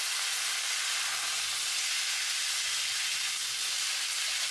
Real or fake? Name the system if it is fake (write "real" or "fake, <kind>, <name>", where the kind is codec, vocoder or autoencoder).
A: real